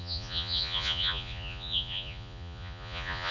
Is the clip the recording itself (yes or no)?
no